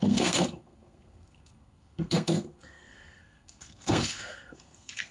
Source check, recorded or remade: remade